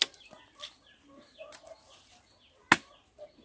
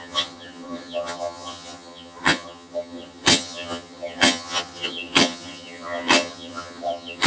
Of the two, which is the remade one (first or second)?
second